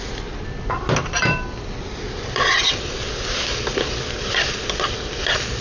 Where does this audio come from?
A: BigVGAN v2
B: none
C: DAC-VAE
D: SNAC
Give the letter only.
A